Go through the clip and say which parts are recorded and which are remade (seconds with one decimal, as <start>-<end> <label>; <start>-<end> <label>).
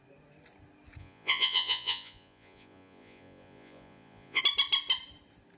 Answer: 0.0-1.0 recorded; 1.0-4.4 remade; 4.4-5.6 recorded